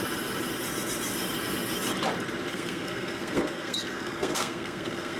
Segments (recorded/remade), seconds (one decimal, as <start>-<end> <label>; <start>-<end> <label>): 0.0-2.5 recorded; 2.5-5.2 remade